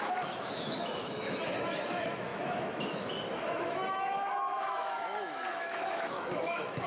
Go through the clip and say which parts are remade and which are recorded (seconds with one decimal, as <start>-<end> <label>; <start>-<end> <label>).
0.0-6.9 remade